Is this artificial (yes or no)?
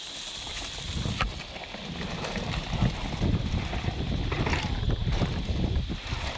no